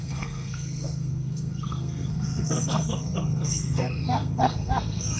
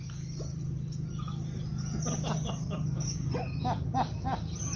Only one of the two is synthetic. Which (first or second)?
first